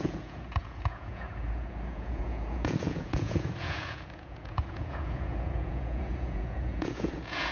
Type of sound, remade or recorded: remade